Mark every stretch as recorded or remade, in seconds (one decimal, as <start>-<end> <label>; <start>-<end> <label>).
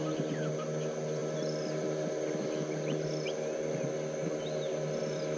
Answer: 0.0-5.4 recorded